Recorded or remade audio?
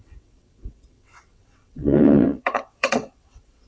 remade